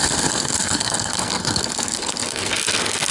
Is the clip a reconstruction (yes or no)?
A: yes